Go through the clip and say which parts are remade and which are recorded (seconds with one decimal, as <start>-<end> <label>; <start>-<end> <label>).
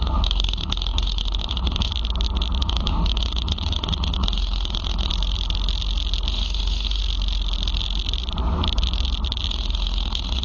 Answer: 0.0-1.9 remade; 1.9-2.6 recorded; 2.6-5.1 remade; 5.1-6.3 recorded; 6.3-7.0 remade; 7.0-9.5 recorded; 9.5-10.4 remade